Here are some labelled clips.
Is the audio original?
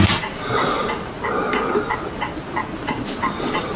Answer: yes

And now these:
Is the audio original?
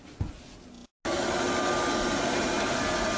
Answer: yes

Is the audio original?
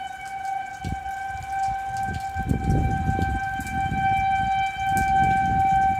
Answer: yes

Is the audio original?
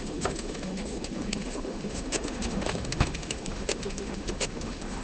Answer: no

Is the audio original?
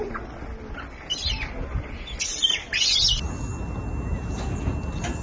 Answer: yes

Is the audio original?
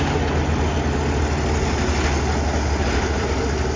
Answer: yes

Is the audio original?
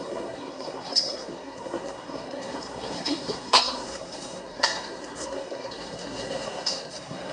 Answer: no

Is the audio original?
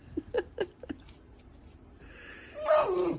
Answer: yes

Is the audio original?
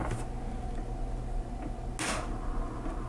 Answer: yes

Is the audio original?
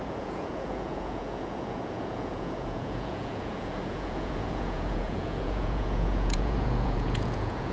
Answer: no